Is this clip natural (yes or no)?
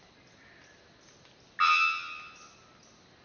yes